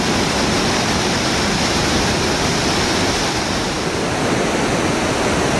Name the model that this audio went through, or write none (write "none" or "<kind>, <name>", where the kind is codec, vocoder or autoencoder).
vocoder, BigVGAN v2